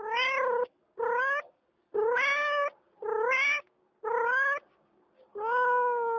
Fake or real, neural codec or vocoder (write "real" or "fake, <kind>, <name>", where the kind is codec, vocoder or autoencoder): real